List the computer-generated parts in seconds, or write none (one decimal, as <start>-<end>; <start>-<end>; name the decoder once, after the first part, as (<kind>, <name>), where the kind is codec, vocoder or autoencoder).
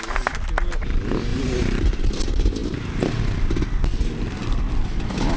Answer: 1.3-2.2 (vocoder, BigVGAN v2)